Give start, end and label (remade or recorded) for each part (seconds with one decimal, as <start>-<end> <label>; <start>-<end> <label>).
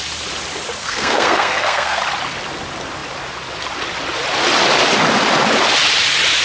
0.0-0.8 recorded; 0.8-2.0 remade; 2.0-6.4 recorded